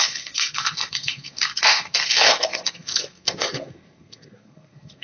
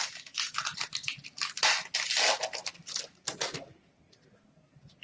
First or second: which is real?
second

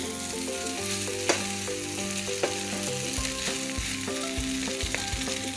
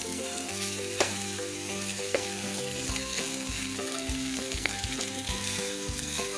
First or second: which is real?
first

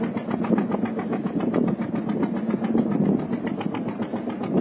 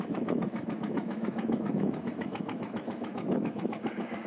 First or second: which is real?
first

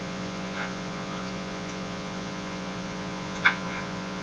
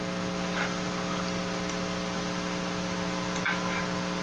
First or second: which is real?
second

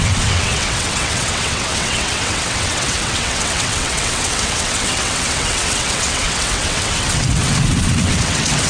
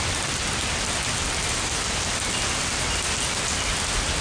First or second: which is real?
second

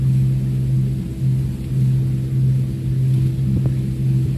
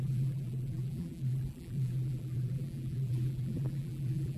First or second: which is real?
first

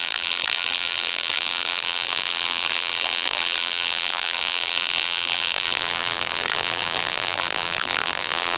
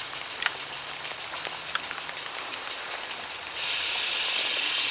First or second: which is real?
second